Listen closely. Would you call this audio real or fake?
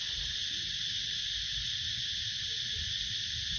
real